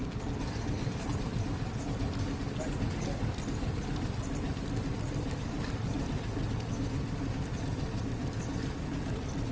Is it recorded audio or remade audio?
recorded